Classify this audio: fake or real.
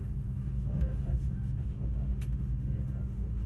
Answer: fake